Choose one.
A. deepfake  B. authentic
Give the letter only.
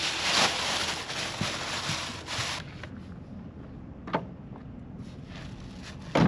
B